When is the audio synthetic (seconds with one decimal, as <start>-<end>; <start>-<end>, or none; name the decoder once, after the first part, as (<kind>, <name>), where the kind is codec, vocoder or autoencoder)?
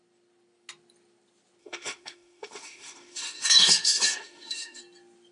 1.6-4.8 (autoencoder, DAC-VAE)